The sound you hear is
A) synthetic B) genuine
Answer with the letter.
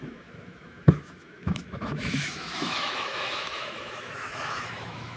A